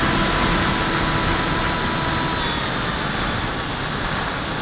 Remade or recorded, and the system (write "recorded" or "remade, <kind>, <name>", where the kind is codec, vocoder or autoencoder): recorded